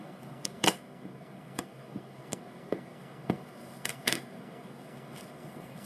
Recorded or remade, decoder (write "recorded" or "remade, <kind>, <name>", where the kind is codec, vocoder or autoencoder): remade, codec, SNAC